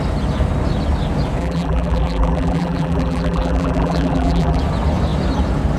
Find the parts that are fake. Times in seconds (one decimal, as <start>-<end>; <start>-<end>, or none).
1.4-4.6